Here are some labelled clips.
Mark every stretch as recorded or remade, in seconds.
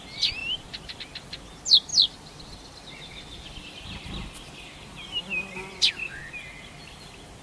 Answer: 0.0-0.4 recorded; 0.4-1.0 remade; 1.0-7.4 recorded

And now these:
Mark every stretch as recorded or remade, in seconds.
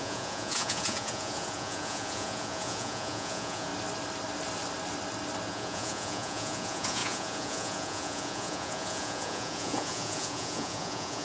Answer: 0.0-3.7 remade; 3.7-5.5 recorded; 5.5-11.2 remade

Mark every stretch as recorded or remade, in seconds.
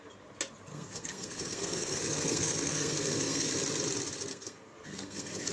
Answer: 0.0-0.7 recorded; 0.7-3.5 remade; 3.5-4.3 recorded; 4.3-5.5 remade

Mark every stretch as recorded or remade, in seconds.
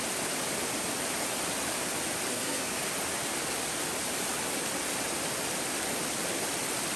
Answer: 0.0-2.3 recorded; 2.3-2.8 remade; 2.8-7.0 recorded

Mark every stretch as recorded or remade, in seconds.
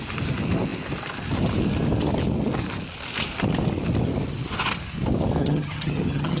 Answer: 0.0-5.4 recorded; 5.4-6.4 remade